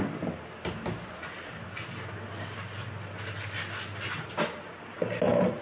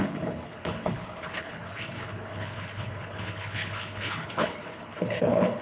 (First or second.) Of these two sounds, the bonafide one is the first